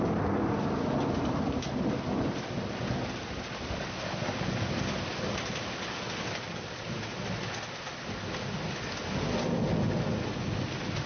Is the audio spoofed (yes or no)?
no